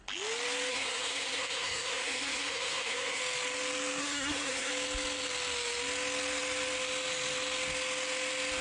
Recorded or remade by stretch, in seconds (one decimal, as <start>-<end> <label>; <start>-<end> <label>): 0.0-0.7 recorded; 0.7-3.2 remade; 3.2-4.0 recorded; 4.0-4.7 remade; 4.7-8.6 recorded